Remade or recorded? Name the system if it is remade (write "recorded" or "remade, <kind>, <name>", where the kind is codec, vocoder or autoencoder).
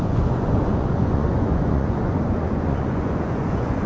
remade, vocoder, Vocos